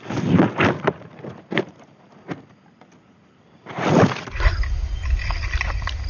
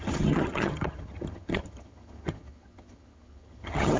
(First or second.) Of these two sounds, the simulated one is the second